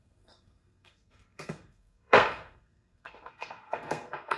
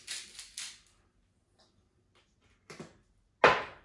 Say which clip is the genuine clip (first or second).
second